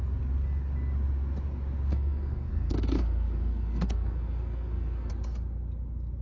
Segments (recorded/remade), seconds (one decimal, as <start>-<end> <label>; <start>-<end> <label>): 0.0-1.9 recorded; 1.9-5.1 remade; 5.1-6.2 recorded